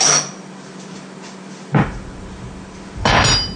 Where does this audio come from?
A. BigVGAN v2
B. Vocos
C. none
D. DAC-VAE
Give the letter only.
C